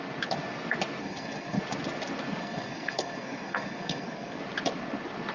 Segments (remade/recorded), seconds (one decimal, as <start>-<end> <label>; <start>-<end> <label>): 0.0-1.0 recorded; 1.0-1.6 remade; 1.6-2.4 recorded; 2.4-4.4 remade; 4.4-5.3 recorded